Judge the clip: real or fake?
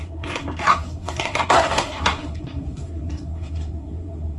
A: fake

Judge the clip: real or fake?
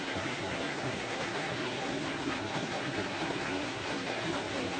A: fake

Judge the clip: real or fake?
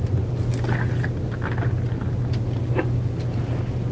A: real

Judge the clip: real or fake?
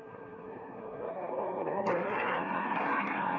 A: fake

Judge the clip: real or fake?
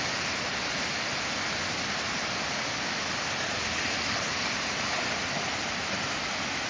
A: real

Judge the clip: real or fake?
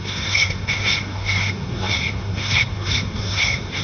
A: fake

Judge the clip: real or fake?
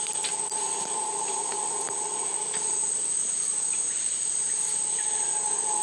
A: real